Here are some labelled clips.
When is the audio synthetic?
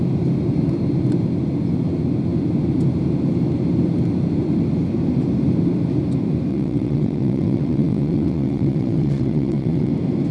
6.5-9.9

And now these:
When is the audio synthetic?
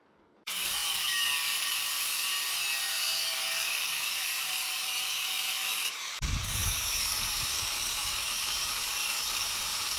0.0-2.3; 2.9-10.0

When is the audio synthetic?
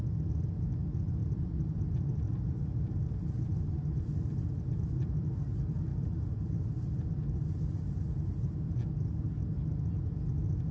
1.2-5.4; 5.9-6.8; 7.2-7.7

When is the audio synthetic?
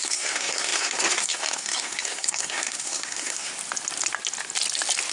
0.0-3.5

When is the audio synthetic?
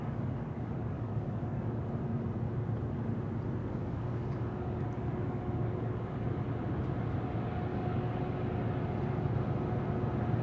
0.0-1.8; 3.6-6.4; 7.7-8.2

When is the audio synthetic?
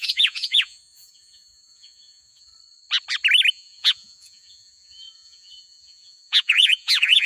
0.0-2.5; 3.5-7.3